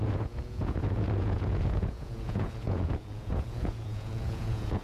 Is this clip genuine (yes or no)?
no